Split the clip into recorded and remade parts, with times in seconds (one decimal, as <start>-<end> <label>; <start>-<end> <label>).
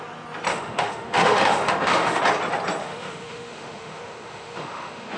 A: 0.0-0.5 recorded; 0.5-2.2 remade; 2.2-2.8 recorded; 2.8-5.2 remade